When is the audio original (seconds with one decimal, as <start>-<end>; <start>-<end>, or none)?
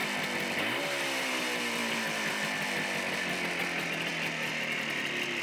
0.0-5.4